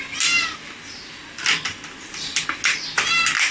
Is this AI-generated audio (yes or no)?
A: no